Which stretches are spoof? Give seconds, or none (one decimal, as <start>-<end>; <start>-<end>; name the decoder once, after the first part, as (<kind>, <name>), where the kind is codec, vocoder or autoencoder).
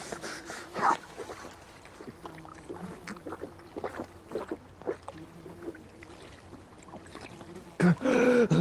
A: 0.0-1.2 (autoencoder, DAC-VAE)